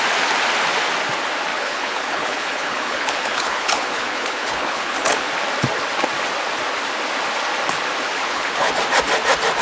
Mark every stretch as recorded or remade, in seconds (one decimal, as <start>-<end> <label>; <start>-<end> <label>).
0.0-1.5 recorded; 1.5-5.3 remade; 5.3-8.2 recorded; 8.2-8.7 remade; 8.7-9.6 recorded